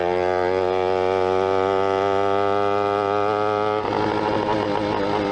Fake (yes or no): no